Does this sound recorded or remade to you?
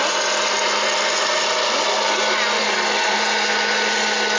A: recorded